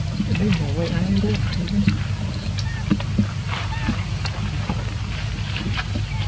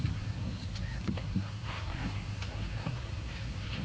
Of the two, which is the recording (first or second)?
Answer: first